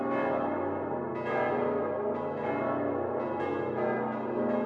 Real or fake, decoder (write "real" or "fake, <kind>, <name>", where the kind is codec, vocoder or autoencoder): real